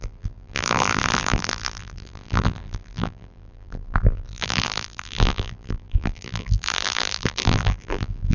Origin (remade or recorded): remade